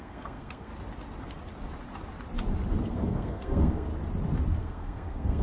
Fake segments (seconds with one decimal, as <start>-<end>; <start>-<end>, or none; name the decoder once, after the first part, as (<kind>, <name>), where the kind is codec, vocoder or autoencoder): 0.0-0.7 (codec, SNAC); 2.8-3.9; 4.6-5.4